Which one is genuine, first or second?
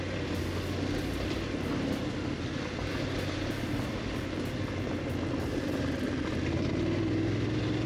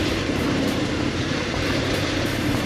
first